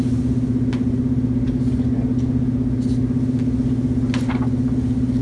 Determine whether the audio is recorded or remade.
recorded